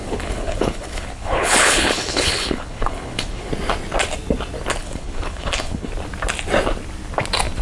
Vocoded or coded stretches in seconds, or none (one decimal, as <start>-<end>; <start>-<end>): 0.0-3.5; 4.8-5.9